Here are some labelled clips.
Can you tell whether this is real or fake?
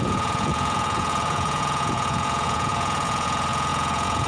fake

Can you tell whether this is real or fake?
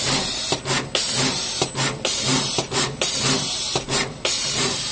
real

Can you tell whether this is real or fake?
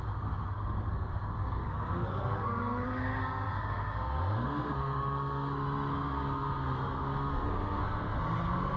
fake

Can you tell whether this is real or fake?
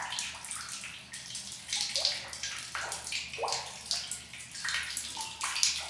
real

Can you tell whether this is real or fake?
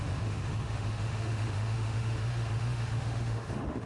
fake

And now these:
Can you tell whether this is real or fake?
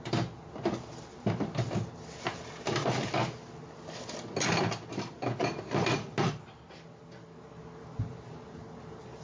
real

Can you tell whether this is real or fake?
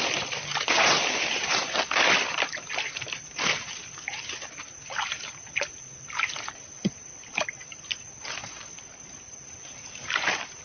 fake